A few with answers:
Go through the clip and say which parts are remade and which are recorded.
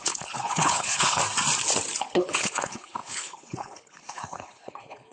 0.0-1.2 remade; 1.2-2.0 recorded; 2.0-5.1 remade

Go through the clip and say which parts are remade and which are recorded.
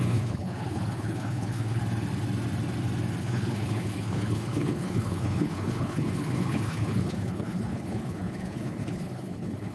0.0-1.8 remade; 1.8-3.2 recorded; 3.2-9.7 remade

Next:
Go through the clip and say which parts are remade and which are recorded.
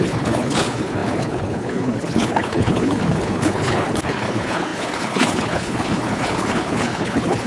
0.0-7.5 remade